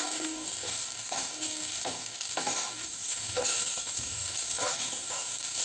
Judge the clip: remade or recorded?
remade